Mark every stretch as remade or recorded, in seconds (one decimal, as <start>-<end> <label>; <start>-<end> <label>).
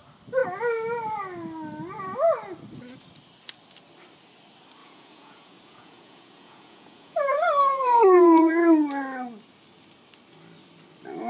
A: 0.0-4.8 recorded; 4.8-8.5 remade; 8.5-11.3 recorded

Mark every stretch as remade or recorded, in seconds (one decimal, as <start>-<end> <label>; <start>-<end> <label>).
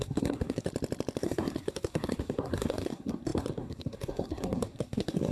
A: 0.0-0.7 remade; 0.7-1.2 recorded; 1.2-5.3 remade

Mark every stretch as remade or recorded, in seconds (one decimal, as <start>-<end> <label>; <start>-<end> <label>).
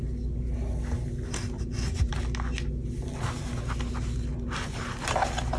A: 0.0-5.6 recorded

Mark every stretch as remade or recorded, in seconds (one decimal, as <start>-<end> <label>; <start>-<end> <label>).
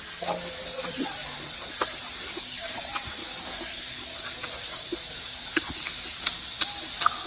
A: 0.0-3.2 recorded; 3.2-4.1 remade; 4.1-7.3 recorded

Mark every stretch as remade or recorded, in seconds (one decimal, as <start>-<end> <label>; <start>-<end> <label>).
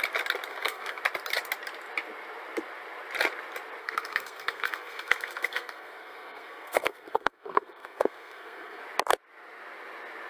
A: 0.0-0.5 recorded; 0.5-1.0 remade; 1.0-3.8 recorded; 3.8-8.8 remade; 8.8-10.3 recorded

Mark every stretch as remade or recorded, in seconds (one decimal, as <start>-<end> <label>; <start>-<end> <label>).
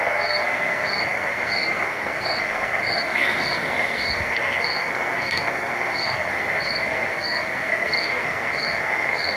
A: 0.0-9.4 remade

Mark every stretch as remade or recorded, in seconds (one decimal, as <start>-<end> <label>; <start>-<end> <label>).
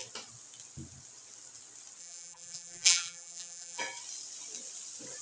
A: 0.0-2.0 recorded; 2.0-3.8 remade; 3.8-5.2 recorded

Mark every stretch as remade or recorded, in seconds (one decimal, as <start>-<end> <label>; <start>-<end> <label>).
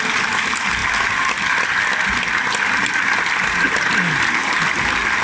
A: 0.0-5.2 recorded